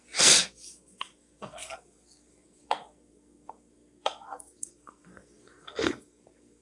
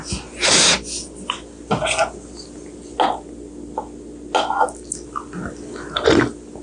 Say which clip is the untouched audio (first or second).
second